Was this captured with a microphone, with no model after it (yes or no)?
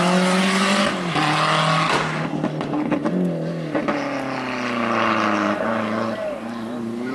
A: yes